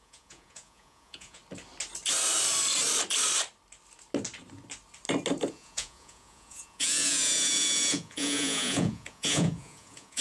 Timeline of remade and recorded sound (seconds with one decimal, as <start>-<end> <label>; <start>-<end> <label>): 0.0-1.4 remade; 1.4-5.5 recorded; 5.5-10.2 remade